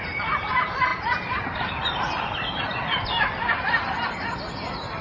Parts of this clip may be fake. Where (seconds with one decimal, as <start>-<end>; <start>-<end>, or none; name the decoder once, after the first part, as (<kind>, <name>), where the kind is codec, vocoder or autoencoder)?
0.0-3.9 (vocoder, BigVGAN v2)

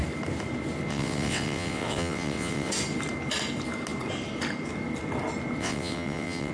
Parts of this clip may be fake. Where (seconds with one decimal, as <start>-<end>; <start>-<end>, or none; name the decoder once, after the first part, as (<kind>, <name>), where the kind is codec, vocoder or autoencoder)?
0.9-2.7 (vocoder, WaveNeXt); 5.6-6.5

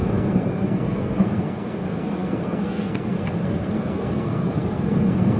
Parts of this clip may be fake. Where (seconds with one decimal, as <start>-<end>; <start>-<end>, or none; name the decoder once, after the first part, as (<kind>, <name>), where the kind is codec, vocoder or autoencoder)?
0.0-5.4 (codec, SNAC)